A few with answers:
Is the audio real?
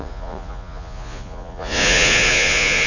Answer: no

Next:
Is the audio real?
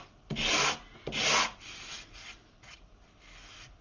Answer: yes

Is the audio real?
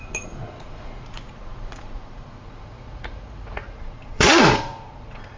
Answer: no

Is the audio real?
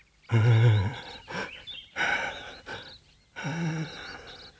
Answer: yes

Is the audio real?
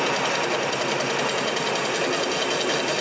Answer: yes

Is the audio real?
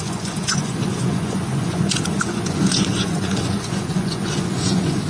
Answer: no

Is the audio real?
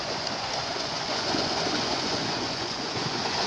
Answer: no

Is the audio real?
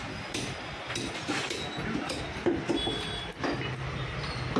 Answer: yes